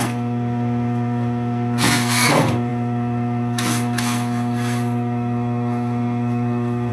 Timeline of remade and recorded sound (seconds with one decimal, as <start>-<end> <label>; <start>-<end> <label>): 0.0-6.9 remade